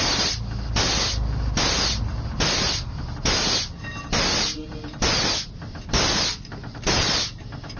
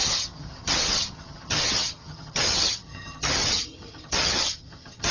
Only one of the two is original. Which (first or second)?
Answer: first